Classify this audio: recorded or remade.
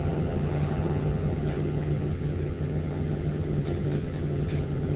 remade